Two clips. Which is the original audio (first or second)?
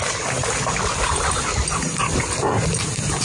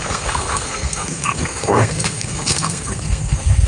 first